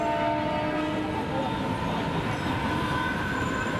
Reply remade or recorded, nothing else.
recorded